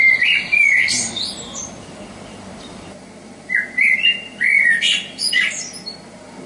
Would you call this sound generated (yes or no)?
yes